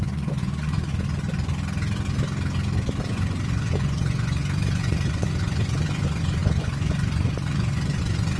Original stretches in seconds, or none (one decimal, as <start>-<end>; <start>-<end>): 0.9-3.1